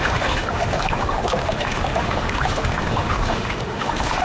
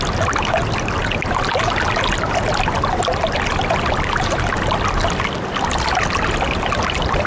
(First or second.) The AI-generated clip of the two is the first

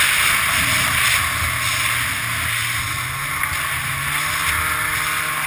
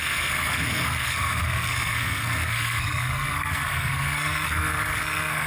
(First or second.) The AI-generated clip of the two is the second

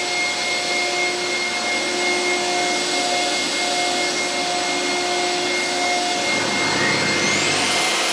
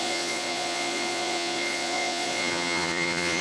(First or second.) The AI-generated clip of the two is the second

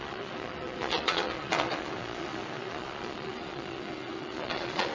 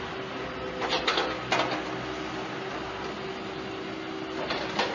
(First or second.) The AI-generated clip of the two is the first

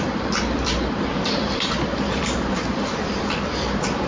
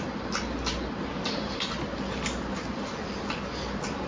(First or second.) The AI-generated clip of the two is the first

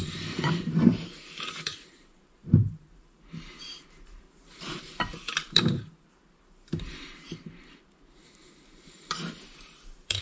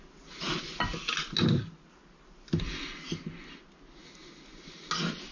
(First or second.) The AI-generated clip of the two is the first